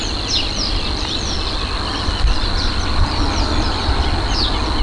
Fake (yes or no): no